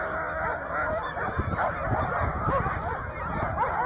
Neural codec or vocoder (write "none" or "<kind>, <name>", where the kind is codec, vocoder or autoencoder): vocoder, BigVGAN v2